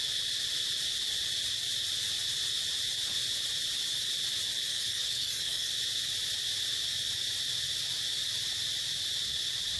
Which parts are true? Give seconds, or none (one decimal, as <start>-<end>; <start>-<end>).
0.0-4.7; 5.7-9.8

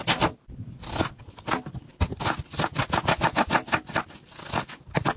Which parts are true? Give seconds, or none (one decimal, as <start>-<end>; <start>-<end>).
0.0-5.2

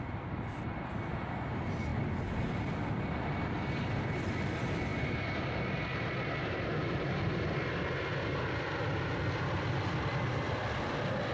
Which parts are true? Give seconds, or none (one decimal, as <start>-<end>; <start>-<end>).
0.0-11.3

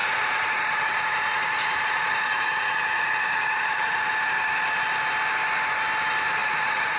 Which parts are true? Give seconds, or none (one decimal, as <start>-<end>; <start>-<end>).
4.1-6.4

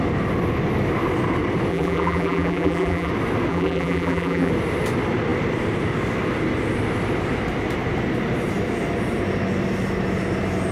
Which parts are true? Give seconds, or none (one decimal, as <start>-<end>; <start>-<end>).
0.0-1.7; 3.1-3.5; 4.5-10.7

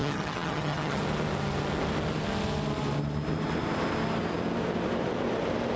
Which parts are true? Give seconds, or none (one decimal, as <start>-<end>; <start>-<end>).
1.0-5.8